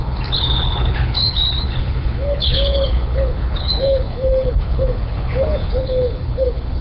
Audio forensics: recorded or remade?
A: remade